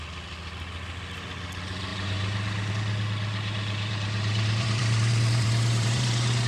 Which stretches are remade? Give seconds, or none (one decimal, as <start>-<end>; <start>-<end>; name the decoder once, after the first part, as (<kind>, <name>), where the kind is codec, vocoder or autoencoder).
1.9-2.7 (vocoder, BigVGAN v2); 3.3-6.5